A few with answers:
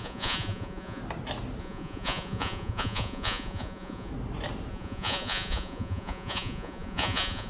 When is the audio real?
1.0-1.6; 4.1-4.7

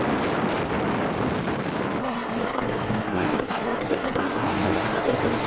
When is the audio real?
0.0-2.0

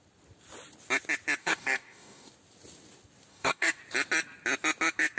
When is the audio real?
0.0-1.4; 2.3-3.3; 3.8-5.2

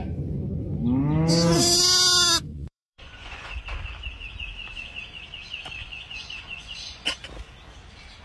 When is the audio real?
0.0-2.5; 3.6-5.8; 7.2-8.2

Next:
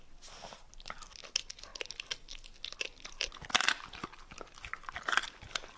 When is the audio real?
0.0-5.8

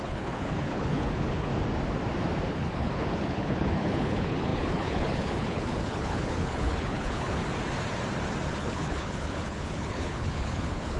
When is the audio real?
1.5-2.5; 7.4-8.5

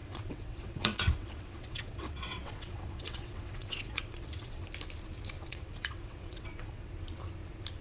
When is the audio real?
4.6-5.5; 6.9-7.8